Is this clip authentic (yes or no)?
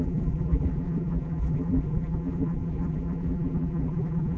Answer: no